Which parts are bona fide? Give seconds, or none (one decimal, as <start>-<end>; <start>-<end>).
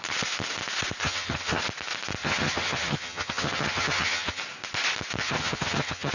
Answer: 0.0-1.0; 1.6-2.2; 4.4-5.2